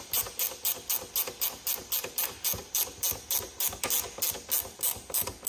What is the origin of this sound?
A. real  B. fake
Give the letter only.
A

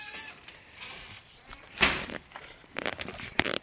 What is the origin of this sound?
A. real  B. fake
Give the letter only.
B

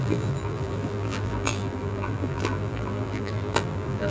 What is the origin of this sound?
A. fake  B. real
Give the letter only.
A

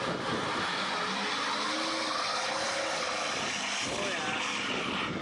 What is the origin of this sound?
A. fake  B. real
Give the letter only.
B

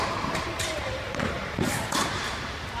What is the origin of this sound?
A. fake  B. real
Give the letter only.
A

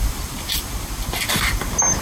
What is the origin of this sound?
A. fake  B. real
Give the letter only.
B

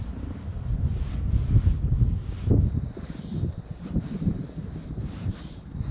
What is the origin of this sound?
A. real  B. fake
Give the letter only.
B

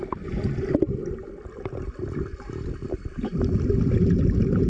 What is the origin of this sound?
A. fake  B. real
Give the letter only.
B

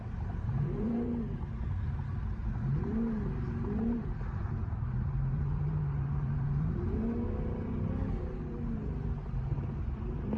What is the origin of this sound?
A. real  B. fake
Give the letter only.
B